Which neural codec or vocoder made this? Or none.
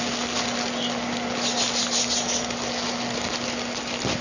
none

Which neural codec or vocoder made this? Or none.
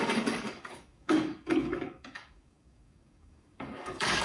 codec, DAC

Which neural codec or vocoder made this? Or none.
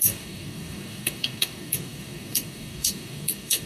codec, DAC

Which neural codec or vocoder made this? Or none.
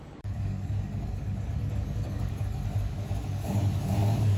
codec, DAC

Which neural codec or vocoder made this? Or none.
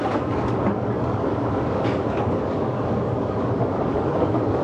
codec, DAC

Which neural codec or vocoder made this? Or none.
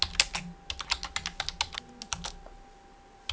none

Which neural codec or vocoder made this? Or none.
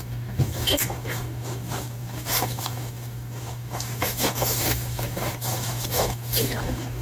codec, DAC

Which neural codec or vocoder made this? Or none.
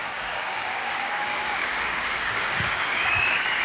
codec, DAC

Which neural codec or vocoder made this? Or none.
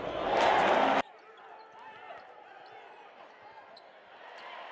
none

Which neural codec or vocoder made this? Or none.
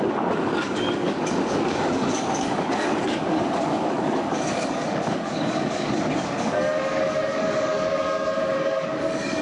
codec, DAC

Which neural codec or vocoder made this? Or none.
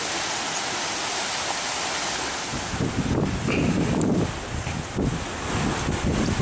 none